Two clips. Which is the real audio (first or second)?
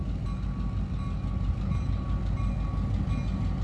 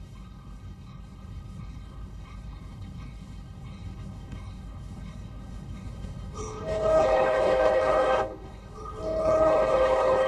first